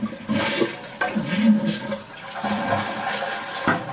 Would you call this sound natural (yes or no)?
yes